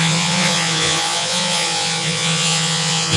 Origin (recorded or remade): remade